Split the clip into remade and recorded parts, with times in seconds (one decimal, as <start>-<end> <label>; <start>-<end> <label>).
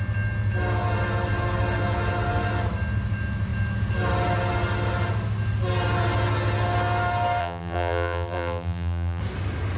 0.0-7.4 recorded; 7.4-9.2 remade; 9.2-9.8 recorded